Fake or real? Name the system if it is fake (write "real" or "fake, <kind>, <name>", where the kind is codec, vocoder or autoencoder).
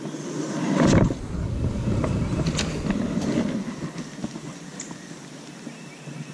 real